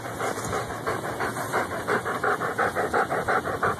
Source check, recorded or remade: remade